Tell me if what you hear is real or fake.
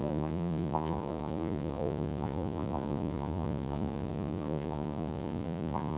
fake